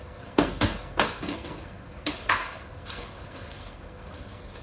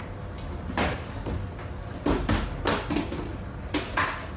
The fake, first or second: first